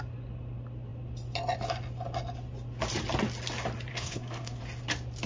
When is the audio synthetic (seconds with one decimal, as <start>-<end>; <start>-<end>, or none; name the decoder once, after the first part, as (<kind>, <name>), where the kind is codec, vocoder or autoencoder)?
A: 3.9-4.6 (codec, SNAC)